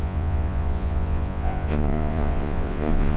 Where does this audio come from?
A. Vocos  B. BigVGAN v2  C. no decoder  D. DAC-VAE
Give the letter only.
A